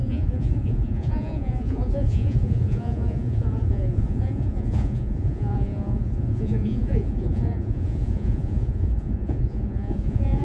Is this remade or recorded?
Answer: remade